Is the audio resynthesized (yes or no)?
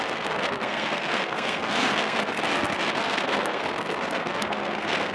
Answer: yes